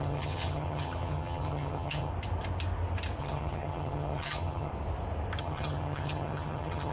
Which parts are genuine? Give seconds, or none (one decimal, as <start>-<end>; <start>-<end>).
2.1-3.2; 4.7-5.4